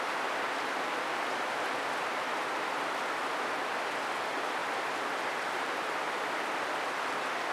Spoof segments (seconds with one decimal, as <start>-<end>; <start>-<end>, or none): 4.6-7.0